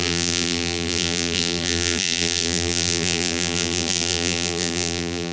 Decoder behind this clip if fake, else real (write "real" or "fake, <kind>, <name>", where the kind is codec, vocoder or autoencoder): fake, vocoder, BigVGAN v2